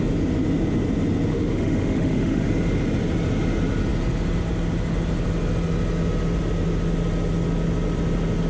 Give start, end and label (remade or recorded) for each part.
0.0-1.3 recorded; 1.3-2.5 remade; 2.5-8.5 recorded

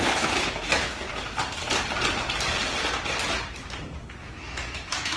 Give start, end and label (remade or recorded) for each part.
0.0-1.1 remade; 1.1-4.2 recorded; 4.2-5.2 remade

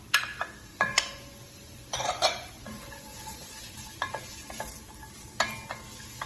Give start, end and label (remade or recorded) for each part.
0.0-0.7 recorded; 0.7-4.5 remade; 4.5-6.3 recorded